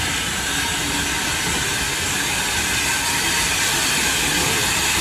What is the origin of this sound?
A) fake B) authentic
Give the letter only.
B